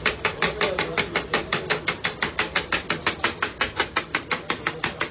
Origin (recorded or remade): recorded